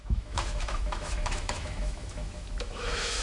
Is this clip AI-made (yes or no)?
yes